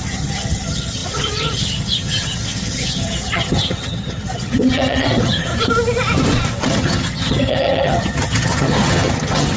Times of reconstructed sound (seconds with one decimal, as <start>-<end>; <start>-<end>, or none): 0.0-5.5; 6.6-9.6